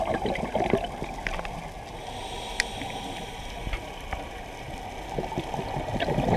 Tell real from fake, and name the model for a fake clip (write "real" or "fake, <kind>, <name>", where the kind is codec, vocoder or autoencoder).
real